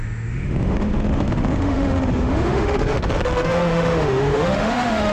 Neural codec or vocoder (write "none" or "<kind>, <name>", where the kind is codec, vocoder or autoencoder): autoencoder, DAC-VAE